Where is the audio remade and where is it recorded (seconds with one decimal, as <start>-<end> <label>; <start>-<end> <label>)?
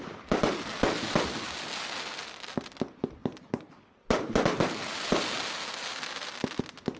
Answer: 0.0-7.0 recorded